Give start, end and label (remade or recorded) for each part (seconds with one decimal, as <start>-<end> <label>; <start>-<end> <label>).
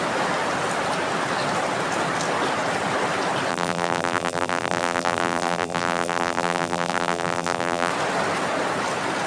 0.0-3.5 recorded; 3.5-7.9 remade; 7.9-9.3 recorded